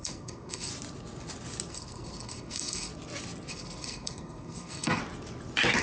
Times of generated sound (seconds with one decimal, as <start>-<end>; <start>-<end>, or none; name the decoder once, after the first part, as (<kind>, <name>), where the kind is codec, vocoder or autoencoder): 0.0-0.7 (codec, SNAC); 1.7-2.9; 3.5-5.0